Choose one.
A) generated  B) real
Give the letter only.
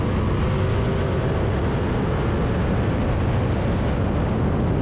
B